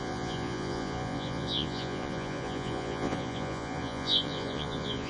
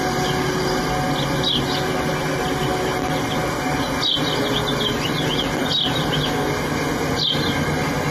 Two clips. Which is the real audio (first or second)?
second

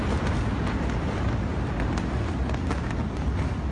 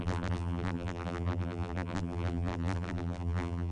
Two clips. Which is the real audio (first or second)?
first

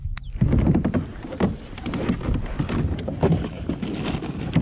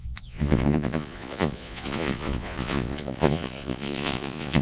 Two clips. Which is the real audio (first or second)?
first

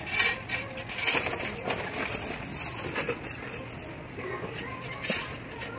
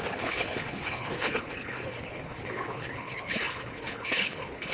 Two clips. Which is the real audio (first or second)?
first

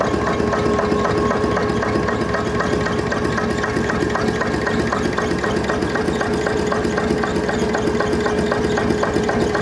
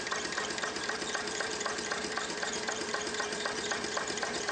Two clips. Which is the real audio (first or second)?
first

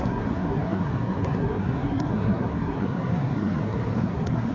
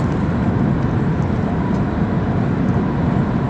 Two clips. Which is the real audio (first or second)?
second